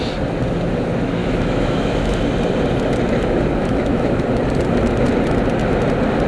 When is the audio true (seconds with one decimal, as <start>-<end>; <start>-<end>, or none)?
0.0-1.2; 2.2-3.6; 4.2-6.3